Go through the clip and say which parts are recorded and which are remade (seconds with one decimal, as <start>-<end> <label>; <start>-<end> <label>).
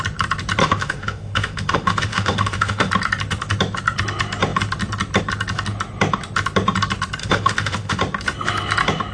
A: 0.0-0.6 recorded; 0.6-2.9 remade; 2.9-7.2 recorded; 7.2-8.0 remade; 8.0-9.1 recorded